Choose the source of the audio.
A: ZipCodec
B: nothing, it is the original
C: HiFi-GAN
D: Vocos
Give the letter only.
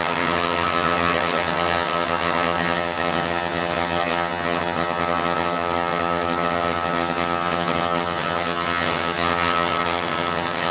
C